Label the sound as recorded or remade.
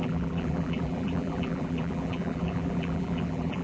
remade